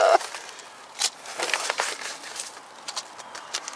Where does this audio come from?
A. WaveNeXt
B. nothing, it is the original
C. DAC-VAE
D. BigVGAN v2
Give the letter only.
D